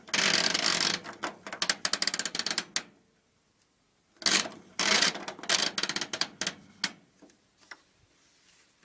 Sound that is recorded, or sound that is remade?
recorded